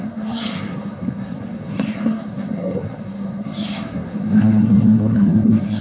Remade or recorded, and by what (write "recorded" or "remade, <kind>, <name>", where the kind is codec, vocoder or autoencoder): remade, codec, SNAC